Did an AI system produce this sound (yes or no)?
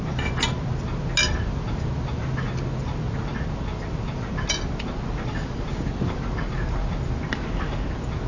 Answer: no